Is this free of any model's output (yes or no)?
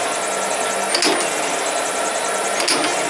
yes